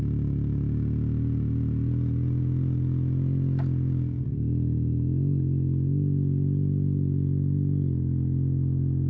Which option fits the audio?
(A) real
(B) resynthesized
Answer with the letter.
A